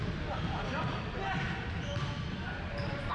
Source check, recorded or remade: recorded